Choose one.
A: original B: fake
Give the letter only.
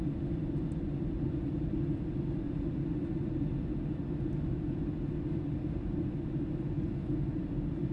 A